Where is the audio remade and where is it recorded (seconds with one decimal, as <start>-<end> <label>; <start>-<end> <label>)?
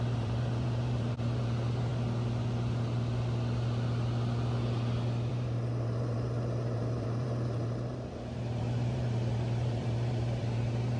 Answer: 0.0-1.9 remade; 1.9-5.3 recorded; 5.3-11.0 remade